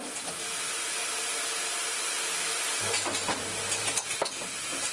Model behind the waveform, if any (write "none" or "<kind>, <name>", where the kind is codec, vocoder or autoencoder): none